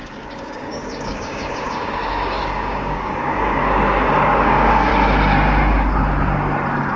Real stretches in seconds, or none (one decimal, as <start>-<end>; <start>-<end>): 4.9-7.0